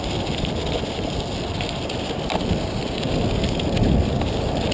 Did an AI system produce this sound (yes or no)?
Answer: no